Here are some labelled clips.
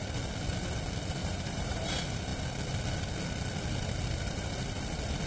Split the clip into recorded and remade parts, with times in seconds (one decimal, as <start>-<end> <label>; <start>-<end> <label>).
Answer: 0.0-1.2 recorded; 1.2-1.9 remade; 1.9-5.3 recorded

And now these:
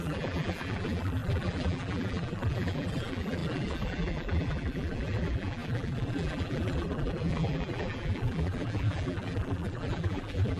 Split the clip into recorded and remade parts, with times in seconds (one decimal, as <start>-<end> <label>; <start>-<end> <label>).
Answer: 0.0-10.6 remade

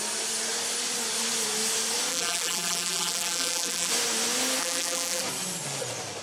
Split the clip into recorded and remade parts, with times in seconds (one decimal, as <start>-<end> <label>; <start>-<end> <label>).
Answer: 0.0-2.1 recorded; 2.1-3.9 remade; 3.9-4.6 recorded; 4.6-5.2 remade; 5.2-6.2 recorded

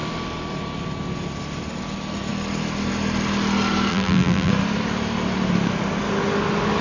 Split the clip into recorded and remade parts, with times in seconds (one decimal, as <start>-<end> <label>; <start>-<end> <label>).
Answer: 0.0-3.9 recorded; 3.9-4.5 remade; 4.5-6.8 recorded